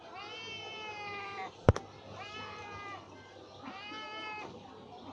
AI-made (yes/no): no